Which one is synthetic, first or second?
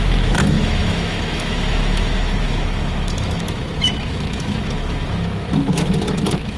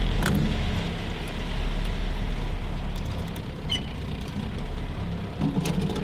first